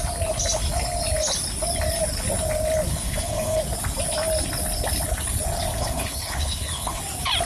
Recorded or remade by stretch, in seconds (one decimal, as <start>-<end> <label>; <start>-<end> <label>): 0.0-2.9 recorded; 2.9-3.6 remade; 3.6-5.7 recorded; 5.7-7.0 remade; 7.0-7.4 recorded